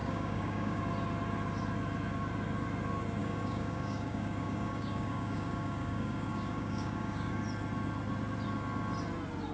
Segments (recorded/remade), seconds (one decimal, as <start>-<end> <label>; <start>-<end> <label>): 0.0-0.8 remade; 0.8-3.2 recorded; 3.2-7.4 remade; 7.4-9.5 recorded